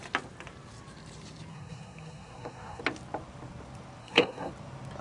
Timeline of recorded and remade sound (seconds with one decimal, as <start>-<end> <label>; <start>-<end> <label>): 0.0-1.5 recorded; 1.5-2.8 remade; 2.8-4.0 recorded; 4.0-4.5 remade; 4.5-5.0 recorded